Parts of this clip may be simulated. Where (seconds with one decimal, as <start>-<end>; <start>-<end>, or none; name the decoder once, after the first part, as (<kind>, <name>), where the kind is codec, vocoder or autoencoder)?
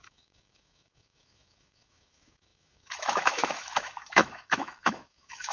0.0-5.5 (autoencoder, DAC-VAE)